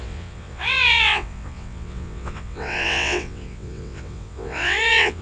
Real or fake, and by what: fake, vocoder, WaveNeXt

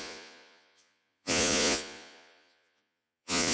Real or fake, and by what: fake, vocoder, Vocos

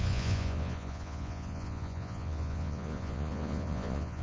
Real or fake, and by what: fake, vocoder, Vocos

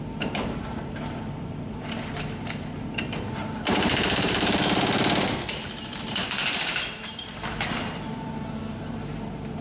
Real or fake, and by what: fake, vocoder, BigVGAN v2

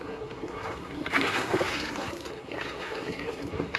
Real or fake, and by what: fake, codec, SNAC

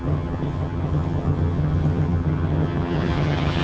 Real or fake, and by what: fake, vocoder, HiFi-GAN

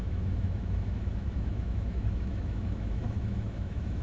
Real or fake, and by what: fake, autoencoder, DAC-VAE